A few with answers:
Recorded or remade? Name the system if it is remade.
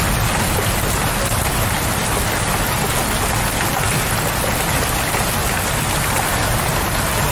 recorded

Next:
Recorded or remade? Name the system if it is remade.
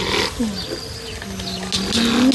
recorded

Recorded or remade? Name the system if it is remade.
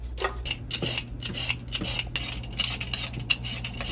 recorded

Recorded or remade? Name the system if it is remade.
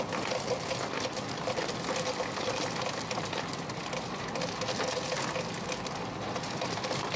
recorded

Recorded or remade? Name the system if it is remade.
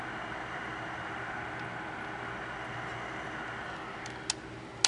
recorded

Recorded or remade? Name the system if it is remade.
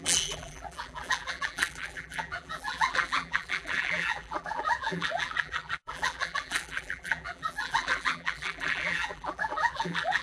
remade, vocoder, BigVGAN v2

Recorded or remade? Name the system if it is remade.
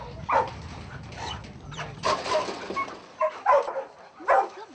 recorded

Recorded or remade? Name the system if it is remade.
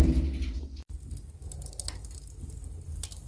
recorded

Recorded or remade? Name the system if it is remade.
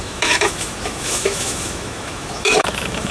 remade, autoencoder, DAC-VAE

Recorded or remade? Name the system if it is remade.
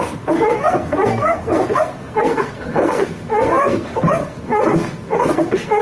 remade, codec, SNAC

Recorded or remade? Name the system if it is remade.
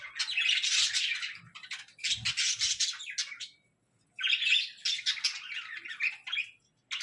recorded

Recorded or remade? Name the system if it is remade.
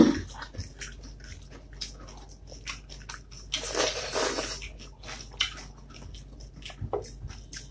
recorded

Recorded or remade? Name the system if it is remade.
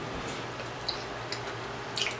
recorded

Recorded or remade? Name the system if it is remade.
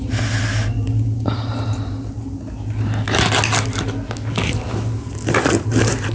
recorded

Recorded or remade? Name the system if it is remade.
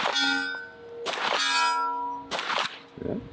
recorded